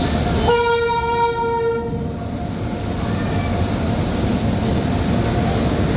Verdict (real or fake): real